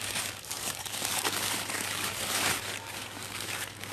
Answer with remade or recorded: remade